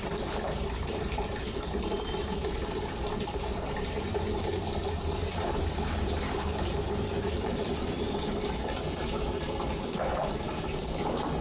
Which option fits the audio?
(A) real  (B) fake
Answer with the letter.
B